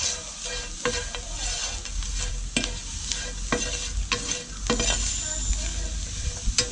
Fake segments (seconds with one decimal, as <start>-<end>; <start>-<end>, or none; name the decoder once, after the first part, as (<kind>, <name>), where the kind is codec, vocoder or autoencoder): none